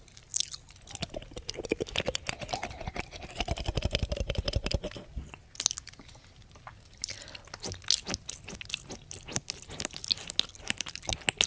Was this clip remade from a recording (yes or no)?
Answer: no